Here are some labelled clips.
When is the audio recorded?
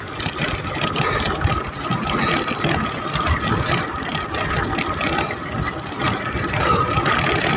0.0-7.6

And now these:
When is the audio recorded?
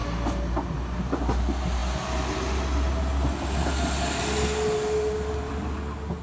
0.0-6.2